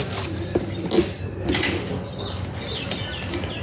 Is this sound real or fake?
real